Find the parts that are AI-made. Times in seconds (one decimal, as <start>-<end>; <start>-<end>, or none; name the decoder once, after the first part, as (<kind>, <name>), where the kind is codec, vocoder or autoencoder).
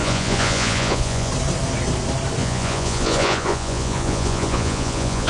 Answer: 0.0-1.3 (vocoder, Vocos); 2.4-5.3